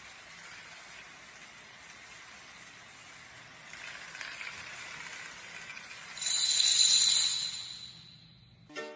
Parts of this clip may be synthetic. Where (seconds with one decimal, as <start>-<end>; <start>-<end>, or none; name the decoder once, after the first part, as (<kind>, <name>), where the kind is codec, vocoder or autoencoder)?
5.7-6.2 (vocoder, Vocos)